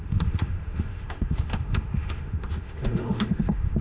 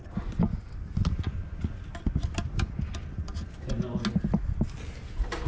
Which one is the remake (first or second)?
first